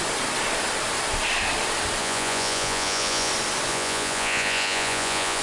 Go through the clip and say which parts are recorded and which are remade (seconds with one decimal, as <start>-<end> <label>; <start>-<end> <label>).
0.0-2.0 recorded; 2.0-3.3 remade; 3.3-3.7 recorded; 3.7-5.4 remade